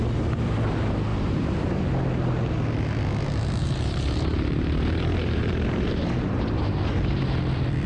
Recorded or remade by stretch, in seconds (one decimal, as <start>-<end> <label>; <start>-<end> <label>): 0.0-1.1 recorded; 1.1-1.8 remade; 1.8-3.6 recorded; 3.6-7.2 remade; 7.2-7.9 recorded